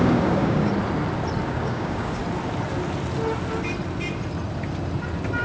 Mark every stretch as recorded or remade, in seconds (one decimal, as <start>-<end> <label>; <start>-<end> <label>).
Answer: 0.0-0.7 remade; 0.7-1.5 recorded; 1.5-2.2 remade; 2.2-5.4 recorded